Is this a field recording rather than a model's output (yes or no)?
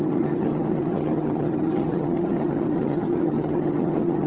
no